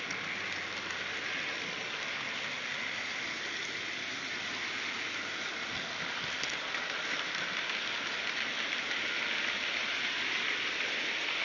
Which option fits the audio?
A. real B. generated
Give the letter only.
A